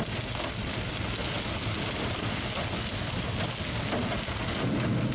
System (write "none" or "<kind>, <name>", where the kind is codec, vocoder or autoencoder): none